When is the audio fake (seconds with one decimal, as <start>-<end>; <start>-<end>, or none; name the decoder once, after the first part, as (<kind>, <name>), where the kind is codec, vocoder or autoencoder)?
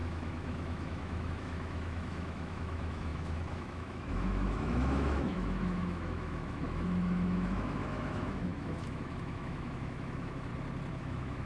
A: 0.0-10.5 (autoencoder, DAC-VAE); 11.0-11.5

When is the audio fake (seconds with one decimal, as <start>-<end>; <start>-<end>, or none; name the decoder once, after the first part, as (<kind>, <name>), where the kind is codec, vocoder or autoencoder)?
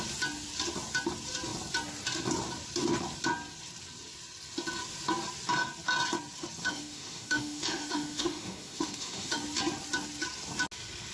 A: 6.6-9.4 (autoencoder, DAC-VAE)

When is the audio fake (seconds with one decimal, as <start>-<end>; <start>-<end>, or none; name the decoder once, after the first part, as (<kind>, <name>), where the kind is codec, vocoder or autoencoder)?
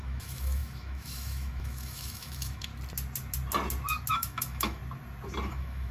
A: 0.0-2.7 (autoencoder, DAC-VAE); 4.1-4.8; 5.5-5.9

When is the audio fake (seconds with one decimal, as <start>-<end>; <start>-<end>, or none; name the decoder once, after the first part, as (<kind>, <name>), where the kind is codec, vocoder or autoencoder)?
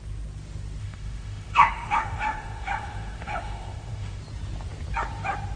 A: 0.8-4.2 (autoencoder, DAC-VAE)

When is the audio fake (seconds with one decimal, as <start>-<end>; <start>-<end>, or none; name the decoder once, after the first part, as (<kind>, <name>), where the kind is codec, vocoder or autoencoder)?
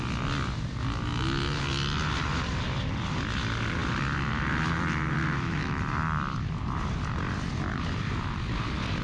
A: 5.2-5.8 (autoencoder, DAC-VAE)